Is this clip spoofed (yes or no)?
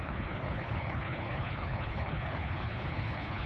yes